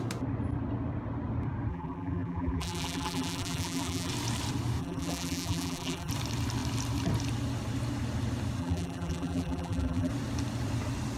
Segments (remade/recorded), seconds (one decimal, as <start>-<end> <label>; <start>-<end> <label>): 0.0-1.7 recorded; 1.7-4.1 remade; 4.1-4.8 recorded; 4.8-6.1 remade; 6.1-8.6 recorded; 8.6-10.1 remade; 10.1-11.2 recorded